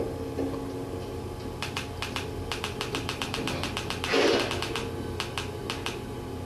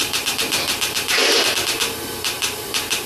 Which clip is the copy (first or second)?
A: second